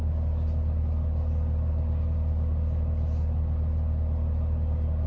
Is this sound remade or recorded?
recorded